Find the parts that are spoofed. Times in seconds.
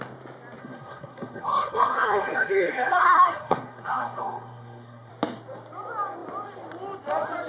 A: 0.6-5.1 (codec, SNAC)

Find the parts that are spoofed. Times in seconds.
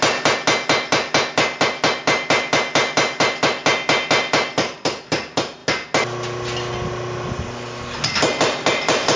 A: none